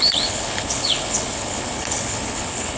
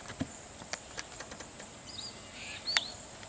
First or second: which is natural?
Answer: second